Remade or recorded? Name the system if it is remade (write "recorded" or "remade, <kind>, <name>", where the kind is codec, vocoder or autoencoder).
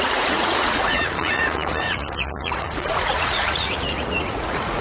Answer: remade, vocoder, Vocos